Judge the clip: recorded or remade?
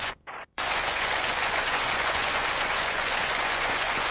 remade